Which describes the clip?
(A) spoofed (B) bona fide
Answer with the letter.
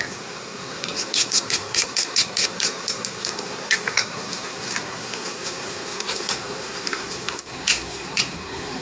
A